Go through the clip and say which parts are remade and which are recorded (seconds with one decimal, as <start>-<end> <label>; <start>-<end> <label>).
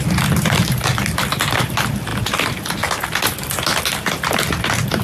0.0-5.0 recorded